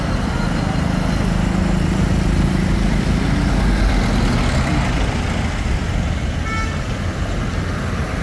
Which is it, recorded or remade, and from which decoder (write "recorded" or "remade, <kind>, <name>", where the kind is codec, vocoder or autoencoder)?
recorded